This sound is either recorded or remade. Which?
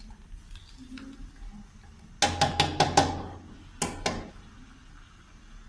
recorded